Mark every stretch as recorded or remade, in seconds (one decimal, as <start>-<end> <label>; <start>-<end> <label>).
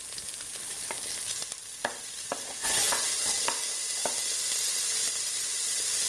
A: 0.0-2.6 recorded; 2.6-3.2 remade; 3.2-6.1 recorded